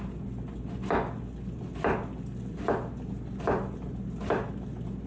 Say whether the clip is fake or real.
real